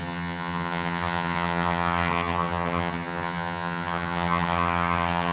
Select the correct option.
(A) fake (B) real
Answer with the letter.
A